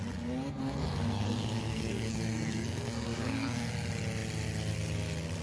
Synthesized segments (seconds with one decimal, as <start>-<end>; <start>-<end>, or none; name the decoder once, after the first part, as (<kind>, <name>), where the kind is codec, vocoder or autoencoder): 0.6-3.7 (codec, SNAC)